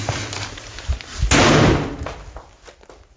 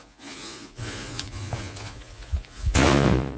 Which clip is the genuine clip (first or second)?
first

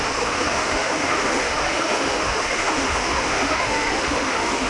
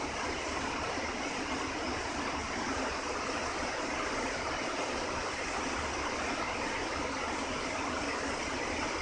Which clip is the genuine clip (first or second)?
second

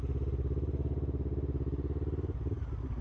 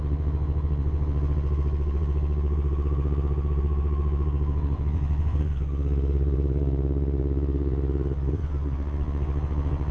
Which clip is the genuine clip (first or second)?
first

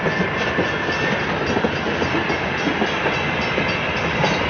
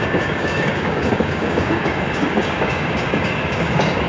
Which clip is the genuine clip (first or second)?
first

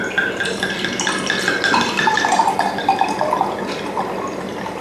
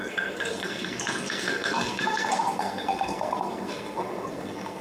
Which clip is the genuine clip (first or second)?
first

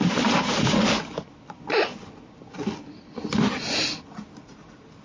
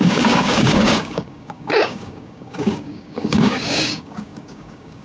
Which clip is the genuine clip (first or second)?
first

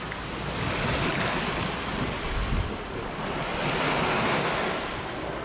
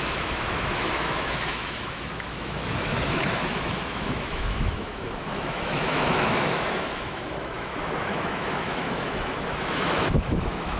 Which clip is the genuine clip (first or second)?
first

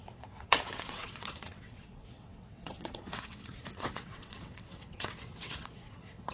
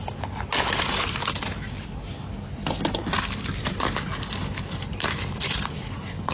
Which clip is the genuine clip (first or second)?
second